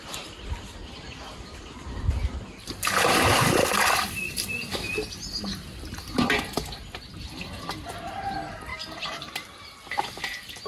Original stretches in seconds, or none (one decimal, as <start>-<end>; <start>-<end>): 0.0-8.7; 9.6-10.7